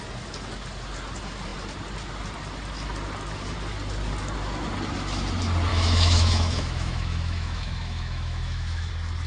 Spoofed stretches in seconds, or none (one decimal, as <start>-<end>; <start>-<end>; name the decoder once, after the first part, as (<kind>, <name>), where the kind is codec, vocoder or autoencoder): 5.7-8.9 (autoencoder, DAC-VAE)